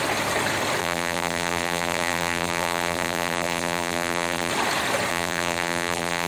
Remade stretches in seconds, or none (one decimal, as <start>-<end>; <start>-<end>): 0.8-4.5; 5.1-6.3